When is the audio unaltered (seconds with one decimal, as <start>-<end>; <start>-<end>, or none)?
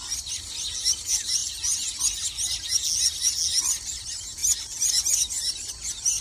0.0-1.4; 2.0-6.2